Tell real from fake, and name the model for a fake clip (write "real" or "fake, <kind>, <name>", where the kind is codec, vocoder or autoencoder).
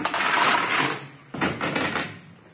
real